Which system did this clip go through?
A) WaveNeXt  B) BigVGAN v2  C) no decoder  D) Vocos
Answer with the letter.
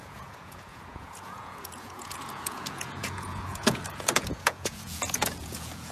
D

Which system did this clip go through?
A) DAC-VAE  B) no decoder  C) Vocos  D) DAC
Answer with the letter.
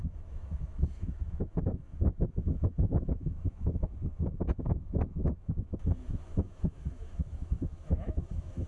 A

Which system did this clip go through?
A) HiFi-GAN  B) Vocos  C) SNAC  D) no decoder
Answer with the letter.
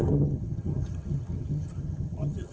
A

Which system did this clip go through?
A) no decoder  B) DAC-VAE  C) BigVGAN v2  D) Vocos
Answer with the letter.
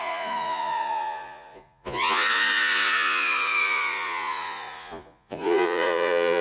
D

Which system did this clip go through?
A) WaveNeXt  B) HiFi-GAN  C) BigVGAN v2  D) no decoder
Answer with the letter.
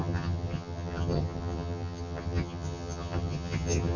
B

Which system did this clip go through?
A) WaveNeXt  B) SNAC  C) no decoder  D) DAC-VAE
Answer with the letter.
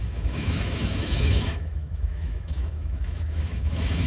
D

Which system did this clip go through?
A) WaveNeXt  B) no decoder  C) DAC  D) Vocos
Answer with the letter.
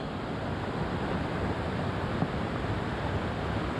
B